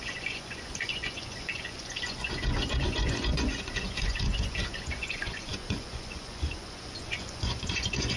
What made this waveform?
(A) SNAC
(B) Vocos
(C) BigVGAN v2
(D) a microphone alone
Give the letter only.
B